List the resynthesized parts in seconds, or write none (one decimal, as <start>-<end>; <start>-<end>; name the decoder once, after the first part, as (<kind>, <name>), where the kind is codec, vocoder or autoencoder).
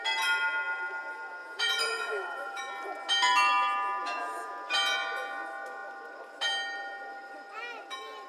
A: 1.4-2.6 (vocoder, Vocos); 4.0-4.5